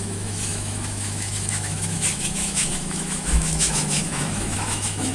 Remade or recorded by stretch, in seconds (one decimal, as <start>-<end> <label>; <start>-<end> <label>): 0.0-5.1 remade